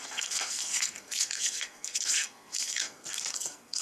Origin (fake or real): fake